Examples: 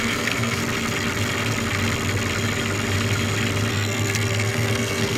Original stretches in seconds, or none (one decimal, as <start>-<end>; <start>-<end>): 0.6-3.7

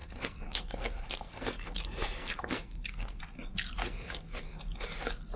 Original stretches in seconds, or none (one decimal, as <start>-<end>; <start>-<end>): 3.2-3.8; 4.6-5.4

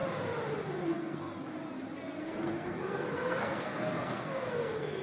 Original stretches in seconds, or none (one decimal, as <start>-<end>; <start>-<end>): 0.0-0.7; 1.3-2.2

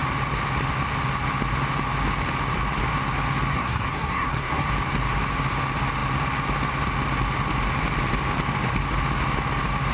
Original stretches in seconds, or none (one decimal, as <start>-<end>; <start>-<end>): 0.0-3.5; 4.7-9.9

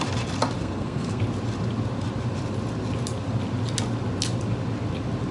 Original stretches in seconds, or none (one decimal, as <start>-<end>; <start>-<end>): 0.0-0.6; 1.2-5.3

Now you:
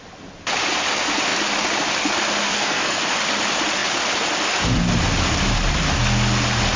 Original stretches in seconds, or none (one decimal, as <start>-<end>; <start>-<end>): 0.0-2.5; 3.0-6.8

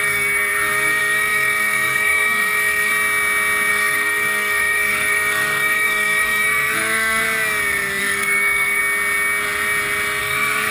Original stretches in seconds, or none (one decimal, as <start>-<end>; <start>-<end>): 2.9-3.7; 7.2-8.0; 8.8-10.2